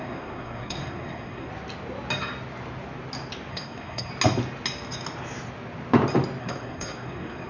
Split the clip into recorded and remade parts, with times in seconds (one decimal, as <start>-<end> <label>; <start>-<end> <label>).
0.0-1.5 remade; 1.5-3.5 recorded; 3.5-4.1 remade; 4.1-6.4 recorded; 6.4-7.5 remade